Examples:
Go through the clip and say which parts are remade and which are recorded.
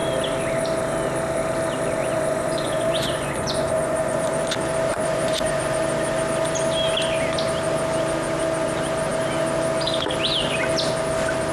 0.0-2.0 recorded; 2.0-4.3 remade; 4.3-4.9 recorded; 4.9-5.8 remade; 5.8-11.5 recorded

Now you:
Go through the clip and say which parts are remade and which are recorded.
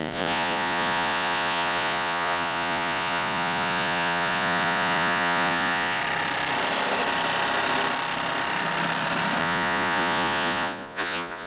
0.0-6.0 remade; 6.0-9.4 recorded; 9.4-11.5 remade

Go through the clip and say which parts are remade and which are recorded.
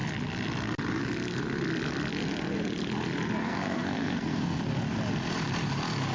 0.0-3.4 recorded; 3.4-4.6 remade; 4.6-6.1 recorded